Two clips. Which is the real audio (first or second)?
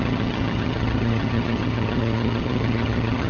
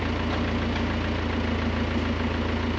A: second